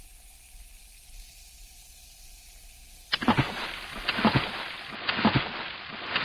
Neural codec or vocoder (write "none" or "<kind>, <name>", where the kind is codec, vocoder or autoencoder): none